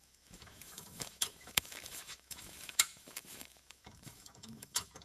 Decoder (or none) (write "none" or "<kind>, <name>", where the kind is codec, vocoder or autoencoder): autoencoder, DAC-VAE